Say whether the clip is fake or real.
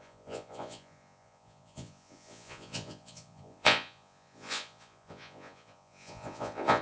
fake